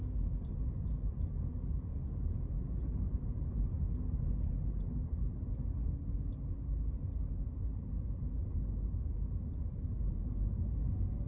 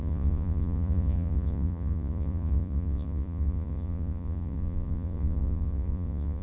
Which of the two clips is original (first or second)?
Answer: first